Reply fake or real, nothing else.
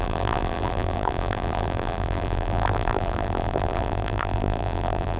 fake